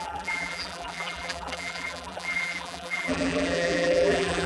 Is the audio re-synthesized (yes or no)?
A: yes